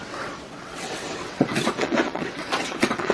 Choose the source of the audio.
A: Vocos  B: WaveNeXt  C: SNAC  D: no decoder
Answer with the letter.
B